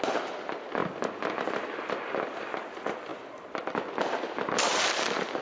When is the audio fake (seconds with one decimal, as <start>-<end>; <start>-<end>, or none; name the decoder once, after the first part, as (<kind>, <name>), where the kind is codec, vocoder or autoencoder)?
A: none

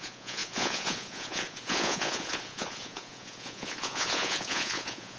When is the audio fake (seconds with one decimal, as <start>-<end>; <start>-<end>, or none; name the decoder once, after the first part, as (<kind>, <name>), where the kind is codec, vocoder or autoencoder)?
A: 0.0-5.2 (vocoder, Vocos)

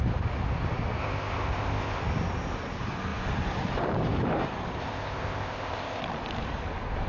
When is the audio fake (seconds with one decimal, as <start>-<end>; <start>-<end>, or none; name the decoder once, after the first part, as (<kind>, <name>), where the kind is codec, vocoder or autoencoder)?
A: 1.0-2.0 (codec, ZipCodec); 4.8-6.0

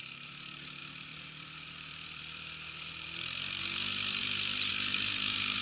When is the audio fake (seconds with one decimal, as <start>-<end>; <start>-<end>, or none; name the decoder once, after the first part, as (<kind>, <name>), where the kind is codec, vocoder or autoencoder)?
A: 0.0-4.7 (vocoder, BigVGAN v2)

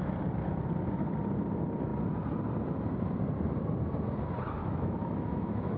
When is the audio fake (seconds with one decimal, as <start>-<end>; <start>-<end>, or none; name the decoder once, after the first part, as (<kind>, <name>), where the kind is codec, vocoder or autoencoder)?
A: 4.6-5.8 (autoencoder, DAC-VAE)